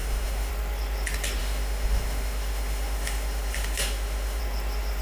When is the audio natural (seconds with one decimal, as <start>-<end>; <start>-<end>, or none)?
0.5-1.4; 4.4-5.0